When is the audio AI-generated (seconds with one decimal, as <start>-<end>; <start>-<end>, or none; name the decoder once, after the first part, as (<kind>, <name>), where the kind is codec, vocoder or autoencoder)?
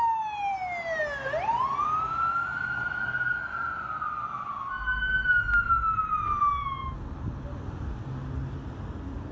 3.4-4.7 (vocoder, Vocos)